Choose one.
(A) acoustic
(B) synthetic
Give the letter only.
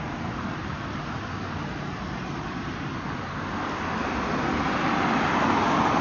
A